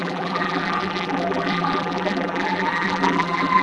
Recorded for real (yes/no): no